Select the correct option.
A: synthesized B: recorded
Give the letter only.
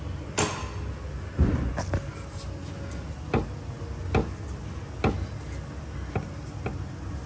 B